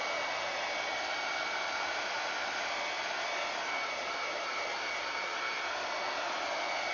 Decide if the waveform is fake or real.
real